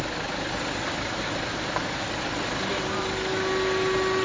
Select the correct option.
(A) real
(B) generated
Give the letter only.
A